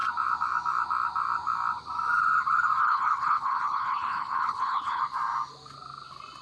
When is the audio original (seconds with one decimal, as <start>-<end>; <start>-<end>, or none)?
0.0-2.8; 5.0-6.4